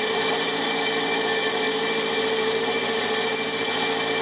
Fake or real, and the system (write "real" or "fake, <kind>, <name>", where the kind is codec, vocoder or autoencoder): real